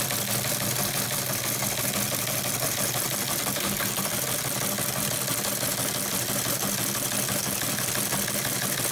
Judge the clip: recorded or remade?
recorded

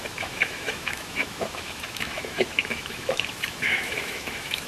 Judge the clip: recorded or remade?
remade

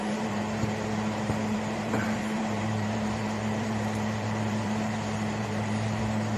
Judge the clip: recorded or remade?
remade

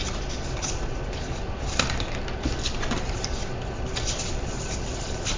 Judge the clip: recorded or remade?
recorded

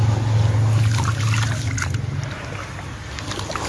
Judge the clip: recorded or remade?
recorded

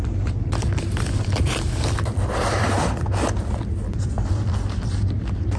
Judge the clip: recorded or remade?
remade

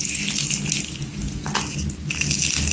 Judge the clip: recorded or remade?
recorded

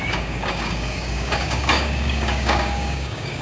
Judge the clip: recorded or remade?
remade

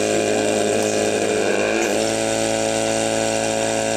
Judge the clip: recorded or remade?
recorded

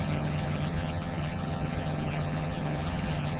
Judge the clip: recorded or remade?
remade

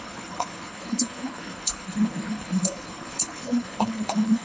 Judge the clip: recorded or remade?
remade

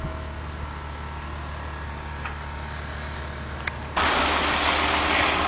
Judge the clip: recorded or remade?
recorded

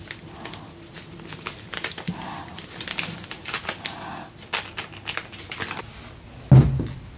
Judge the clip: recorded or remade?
recorded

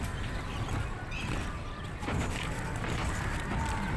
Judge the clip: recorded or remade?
recorded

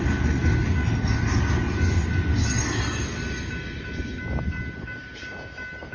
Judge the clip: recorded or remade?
recorded